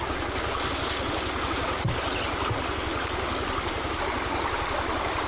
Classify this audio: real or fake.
real